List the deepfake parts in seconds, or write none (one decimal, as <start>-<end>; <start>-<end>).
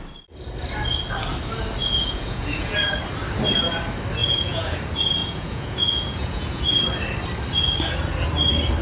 1.8-3.0; 4.2-4.8; 5.2-6.6